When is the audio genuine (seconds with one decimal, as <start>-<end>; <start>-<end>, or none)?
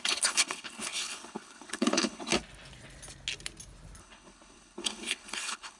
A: 2.3-4.0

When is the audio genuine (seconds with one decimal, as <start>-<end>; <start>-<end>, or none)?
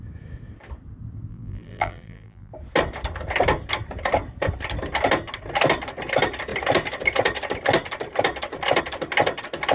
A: 0.0-1.3; 2.5-9.7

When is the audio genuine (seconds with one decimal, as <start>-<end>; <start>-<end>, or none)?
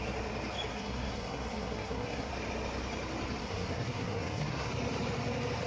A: 0.0-0.7; 2.3-3.4; 4.7-5.7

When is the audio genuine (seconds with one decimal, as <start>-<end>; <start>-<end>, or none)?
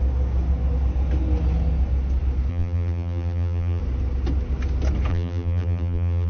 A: 0.0-2.5; 3.8-5.1